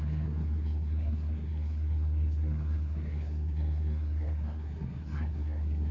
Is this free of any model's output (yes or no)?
no